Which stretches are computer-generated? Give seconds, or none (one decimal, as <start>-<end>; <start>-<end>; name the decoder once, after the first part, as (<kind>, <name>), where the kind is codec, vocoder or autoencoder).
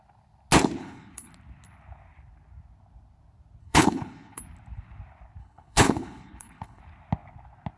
0.8-1.3 (codec, HILCodec); 3.6-4.4; 5.4-6.8